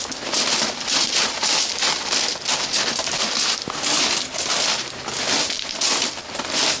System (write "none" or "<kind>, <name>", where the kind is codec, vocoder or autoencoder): none